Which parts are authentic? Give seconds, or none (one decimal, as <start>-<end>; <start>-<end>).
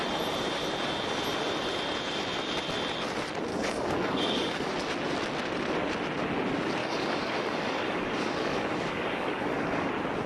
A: 0.0-3.5; 4.7-6.8; 9.9-10.3